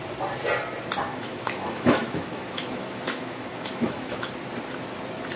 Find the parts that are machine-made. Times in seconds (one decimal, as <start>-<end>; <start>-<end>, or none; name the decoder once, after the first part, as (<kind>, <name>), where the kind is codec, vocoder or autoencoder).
1.1-4.3 (autoencoder, DAC-VAE)